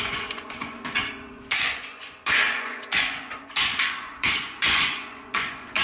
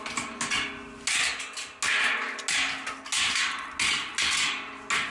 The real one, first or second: second